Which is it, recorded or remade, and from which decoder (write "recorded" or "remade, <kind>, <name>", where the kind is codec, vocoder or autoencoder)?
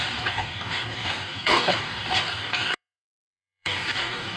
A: remade, codec, DAC